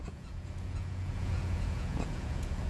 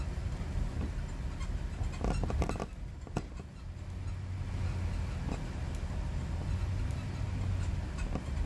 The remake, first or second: first